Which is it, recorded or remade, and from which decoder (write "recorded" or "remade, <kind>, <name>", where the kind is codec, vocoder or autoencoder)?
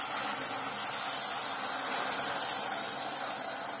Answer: recorded